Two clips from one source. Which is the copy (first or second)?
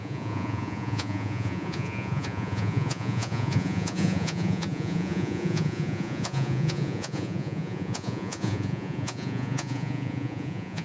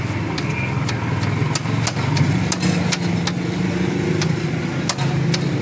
first